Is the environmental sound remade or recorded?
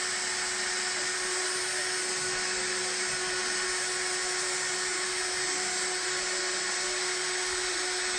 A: recorded